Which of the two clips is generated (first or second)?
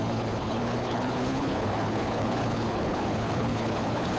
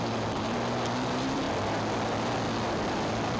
first